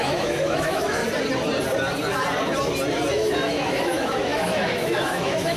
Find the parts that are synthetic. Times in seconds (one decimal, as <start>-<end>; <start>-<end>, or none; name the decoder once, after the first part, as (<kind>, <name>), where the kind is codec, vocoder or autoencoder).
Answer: 0.0-1.0 (autoencoder, DAC-VAE); 3.1-5.6